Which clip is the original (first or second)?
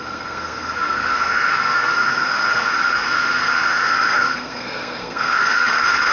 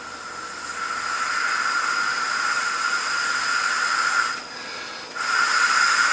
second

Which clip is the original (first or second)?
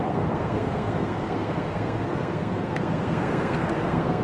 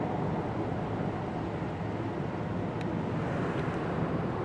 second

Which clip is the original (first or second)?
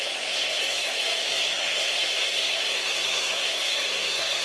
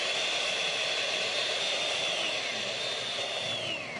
second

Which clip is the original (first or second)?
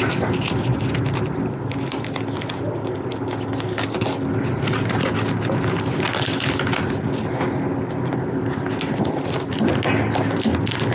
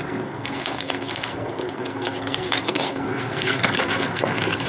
first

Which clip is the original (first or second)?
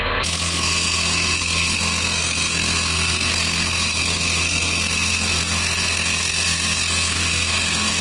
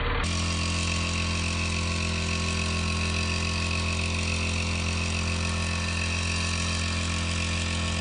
second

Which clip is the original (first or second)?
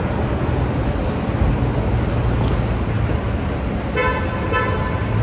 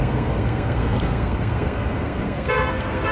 first